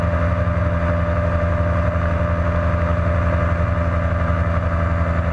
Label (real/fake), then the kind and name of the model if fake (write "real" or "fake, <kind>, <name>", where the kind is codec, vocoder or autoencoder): real